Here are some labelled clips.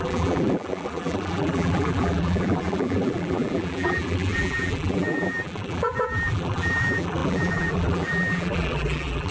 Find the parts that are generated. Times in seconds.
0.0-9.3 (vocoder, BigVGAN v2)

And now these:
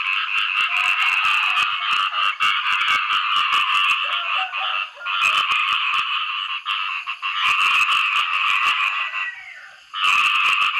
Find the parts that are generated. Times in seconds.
2.2-3.0 (vocoder, BigVGAN v2); 5.6-7.1; 8.2-10.2

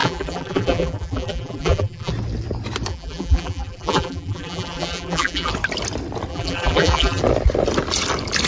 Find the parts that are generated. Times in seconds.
0.0-2.1 (vocoder, BigVGAN v2); 2.9-5.5; 6.3-7.2

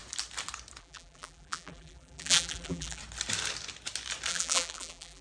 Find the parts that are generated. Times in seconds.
0.8-3.0 (vocoder, BigVGAN v2); 4.3-5.2

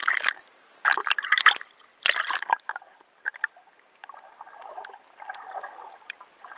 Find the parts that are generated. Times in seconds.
1.3-6.6 (vocoder, BigVGAN v2)

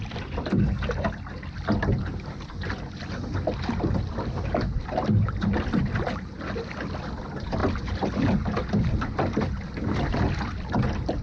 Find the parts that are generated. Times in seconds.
none

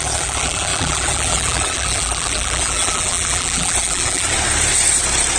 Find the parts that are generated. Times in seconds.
0.0-4.3 (vocoder, BigVGAN v2)